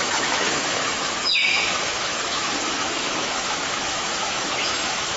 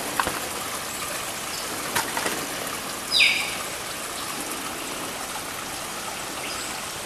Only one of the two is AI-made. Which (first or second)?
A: first